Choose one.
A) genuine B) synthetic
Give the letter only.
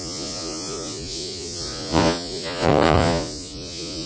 B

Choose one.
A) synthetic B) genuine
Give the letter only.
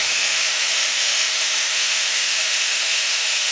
A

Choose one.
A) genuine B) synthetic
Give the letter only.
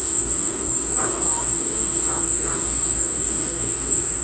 B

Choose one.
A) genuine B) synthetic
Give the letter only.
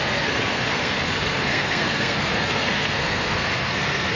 B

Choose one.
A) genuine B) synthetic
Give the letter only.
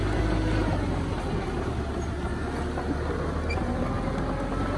A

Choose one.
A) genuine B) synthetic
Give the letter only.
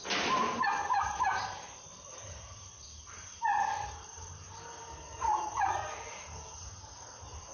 B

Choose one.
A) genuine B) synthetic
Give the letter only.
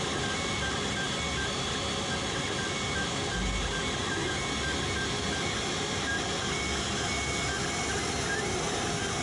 A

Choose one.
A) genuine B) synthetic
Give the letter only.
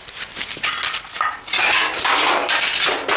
A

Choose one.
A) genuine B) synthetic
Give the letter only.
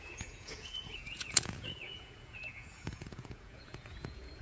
B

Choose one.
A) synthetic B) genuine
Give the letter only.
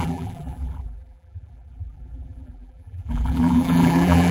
A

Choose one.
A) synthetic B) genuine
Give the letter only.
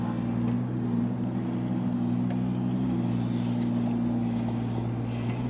B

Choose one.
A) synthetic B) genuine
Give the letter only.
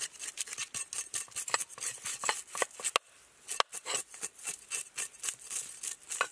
B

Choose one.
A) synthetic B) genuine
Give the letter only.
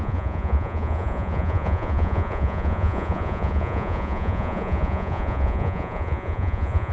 A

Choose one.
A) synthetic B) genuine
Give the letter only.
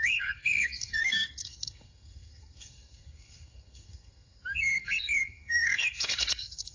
A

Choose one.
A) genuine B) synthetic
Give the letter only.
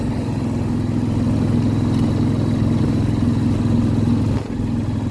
A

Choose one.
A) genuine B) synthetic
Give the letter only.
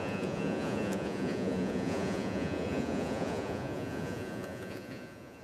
B